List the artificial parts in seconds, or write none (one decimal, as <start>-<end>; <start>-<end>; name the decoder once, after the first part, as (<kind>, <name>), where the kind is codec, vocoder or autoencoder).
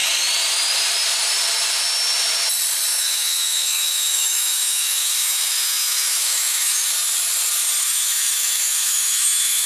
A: 2.9-6.9 (autoencoder, DAC-VAE); 7.8-9.7